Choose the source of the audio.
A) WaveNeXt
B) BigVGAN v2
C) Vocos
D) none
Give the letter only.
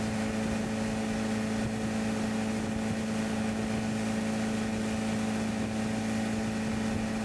D